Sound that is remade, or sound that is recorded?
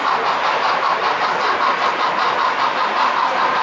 recorded